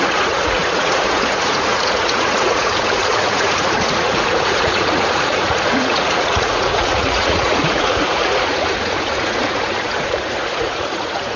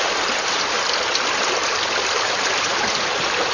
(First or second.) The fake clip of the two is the first